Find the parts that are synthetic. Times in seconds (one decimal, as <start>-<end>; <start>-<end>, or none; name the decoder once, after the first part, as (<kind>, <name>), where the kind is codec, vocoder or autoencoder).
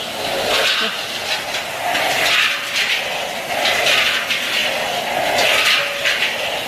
none